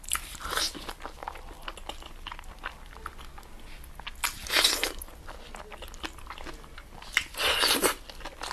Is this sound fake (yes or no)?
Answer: no